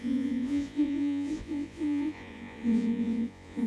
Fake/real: fake